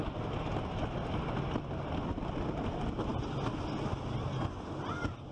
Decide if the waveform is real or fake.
real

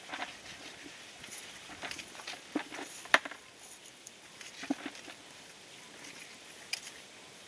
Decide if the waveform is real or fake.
fake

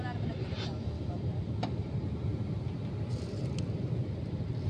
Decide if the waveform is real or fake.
real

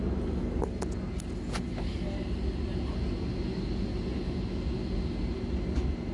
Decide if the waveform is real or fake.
real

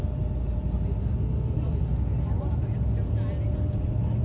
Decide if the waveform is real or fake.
real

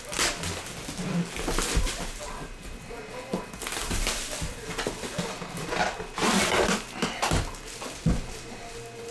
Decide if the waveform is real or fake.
real